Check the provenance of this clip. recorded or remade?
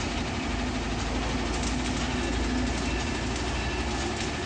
recorded